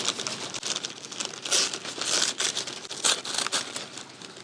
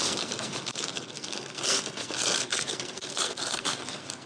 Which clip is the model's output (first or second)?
second